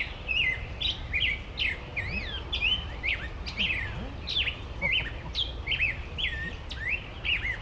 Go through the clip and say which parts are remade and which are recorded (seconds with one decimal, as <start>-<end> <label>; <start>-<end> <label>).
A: 0.0-7.6 recorded